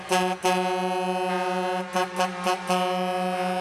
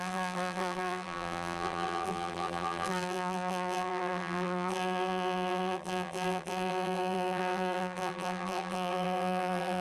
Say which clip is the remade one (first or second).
second